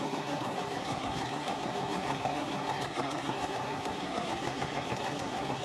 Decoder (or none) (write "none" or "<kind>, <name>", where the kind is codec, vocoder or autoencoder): codec, SNAC